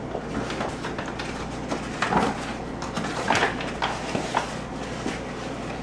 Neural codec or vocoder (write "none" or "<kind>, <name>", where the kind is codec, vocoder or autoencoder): none